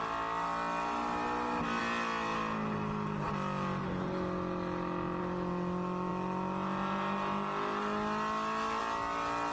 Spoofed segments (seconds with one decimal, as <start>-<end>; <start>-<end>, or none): none